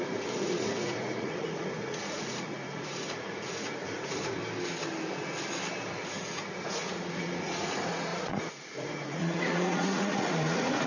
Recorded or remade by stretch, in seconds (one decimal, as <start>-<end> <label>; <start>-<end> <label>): 0.0-4.4 remade; 4.4-5.9 recorded; 5.9-10.9 remade